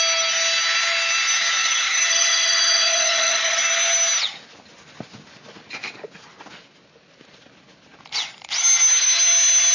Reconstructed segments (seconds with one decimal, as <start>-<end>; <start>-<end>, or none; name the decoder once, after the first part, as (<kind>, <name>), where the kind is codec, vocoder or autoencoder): 1.6-3.6 (vocoder, HiFi-GAN)

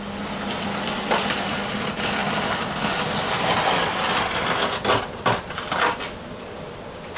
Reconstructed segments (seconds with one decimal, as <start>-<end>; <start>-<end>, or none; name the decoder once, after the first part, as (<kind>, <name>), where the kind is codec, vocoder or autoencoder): none